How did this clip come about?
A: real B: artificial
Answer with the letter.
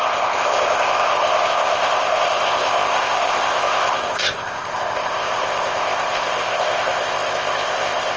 B